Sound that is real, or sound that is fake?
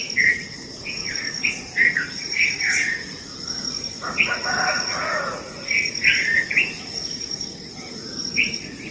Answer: fake